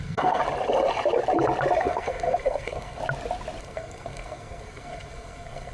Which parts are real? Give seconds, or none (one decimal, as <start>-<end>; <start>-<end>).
0.4-1.8; 3.0-3.6